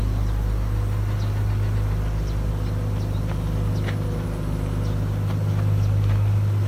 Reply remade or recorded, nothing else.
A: recorded